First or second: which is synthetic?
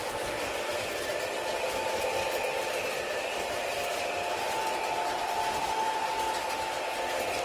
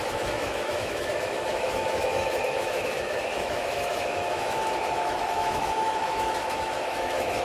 second